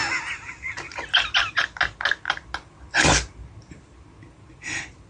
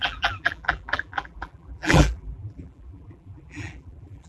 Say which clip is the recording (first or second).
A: first